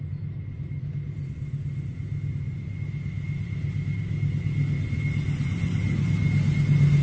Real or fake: real